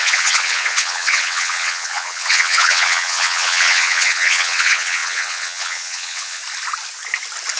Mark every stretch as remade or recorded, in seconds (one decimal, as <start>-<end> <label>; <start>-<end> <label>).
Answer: 0.0-6.4 remade; 6.4-7.6 recorded